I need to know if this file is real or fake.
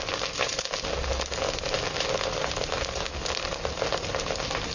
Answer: real